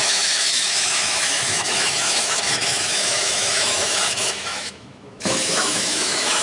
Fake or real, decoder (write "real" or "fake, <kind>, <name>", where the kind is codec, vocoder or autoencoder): fake, autoencoder, DAC-VAE